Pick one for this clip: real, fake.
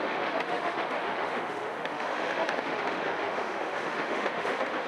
fake